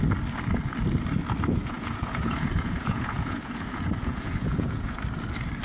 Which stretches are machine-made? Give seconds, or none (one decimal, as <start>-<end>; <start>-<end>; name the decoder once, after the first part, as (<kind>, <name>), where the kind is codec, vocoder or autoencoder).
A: 1.6-5.0 (vocoder, Vocos)

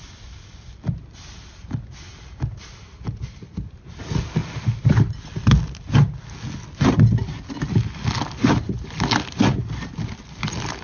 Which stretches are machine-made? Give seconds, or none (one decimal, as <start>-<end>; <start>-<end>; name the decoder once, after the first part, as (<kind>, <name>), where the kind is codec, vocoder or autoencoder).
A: none

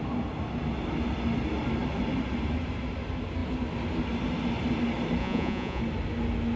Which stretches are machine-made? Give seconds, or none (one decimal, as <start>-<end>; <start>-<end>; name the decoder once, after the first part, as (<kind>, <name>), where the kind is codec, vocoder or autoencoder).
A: 5.2-5.8 (vocoder, Vocos)

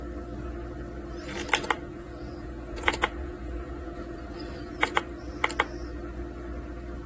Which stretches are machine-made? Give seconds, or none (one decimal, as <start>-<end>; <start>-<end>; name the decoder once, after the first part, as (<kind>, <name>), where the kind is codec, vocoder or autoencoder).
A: 1.9-5.3 (vocoder, Vocos)

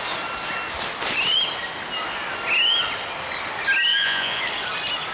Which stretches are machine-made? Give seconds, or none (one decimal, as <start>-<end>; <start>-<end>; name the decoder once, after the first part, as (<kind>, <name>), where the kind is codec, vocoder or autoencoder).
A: 3.9-4.4 (vocoder, Vocos)